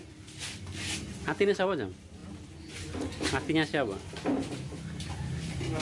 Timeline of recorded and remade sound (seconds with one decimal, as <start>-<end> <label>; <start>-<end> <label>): 0.0-5.8 recorded